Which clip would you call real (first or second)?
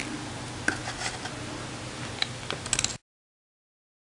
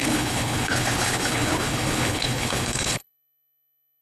first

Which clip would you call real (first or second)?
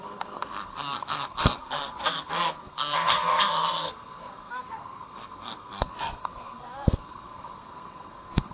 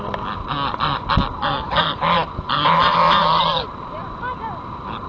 second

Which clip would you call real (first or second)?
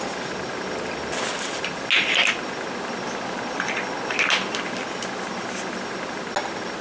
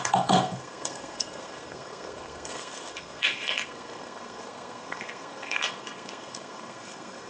first